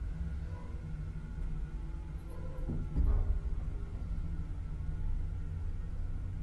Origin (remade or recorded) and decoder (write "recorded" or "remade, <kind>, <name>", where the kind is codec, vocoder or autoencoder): recorded